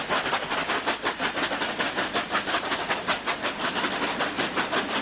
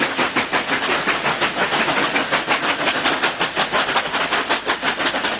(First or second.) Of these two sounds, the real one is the second